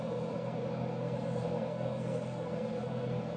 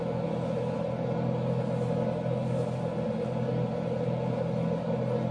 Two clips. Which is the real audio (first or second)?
second